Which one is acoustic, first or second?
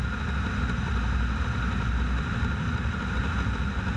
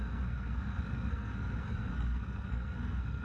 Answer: first